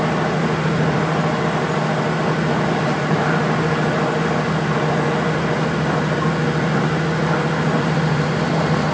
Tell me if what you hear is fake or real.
real